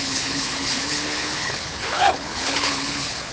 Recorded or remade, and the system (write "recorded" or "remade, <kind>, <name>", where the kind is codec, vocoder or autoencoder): remade, codec, HILCodec